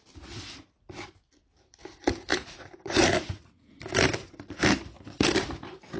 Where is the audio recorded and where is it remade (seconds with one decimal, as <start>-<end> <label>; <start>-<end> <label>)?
0.0-2.3 recorded; 2.3-3.7 remade; 3.7-6.0 recorded